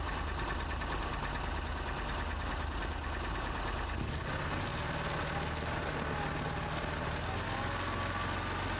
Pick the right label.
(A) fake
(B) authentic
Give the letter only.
B